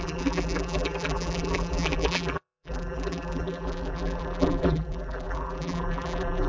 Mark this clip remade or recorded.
remade